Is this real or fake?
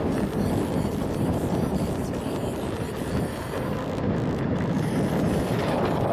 real